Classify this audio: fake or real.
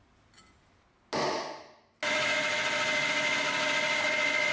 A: real